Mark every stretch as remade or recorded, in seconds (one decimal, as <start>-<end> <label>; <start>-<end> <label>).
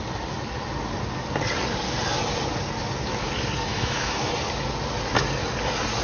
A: 0.0-3.7 recorded; 3.7-4.3 remade; 4.3-6.0 recorded